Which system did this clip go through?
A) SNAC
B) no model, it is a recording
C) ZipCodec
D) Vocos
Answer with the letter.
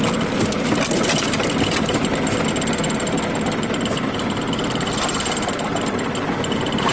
B